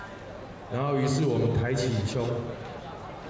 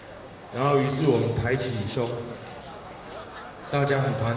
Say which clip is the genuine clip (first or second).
first